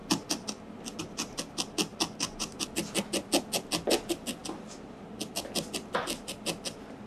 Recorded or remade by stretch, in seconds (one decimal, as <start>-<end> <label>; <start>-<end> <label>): 0.0-7.1 recorded